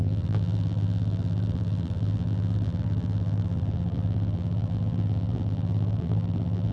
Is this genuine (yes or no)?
no